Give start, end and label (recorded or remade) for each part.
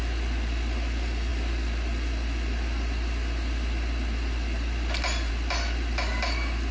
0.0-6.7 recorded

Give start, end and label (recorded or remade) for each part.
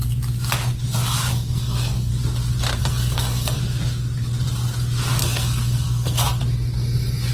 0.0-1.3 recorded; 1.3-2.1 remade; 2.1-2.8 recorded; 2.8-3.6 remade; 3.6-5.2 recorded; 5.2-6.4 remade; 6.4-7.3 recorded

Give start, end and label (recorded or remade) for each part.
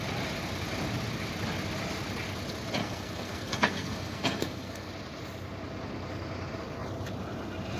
0.0-2.8 recorded; 2.8-4.9 remade; 4.9-7.8 recorded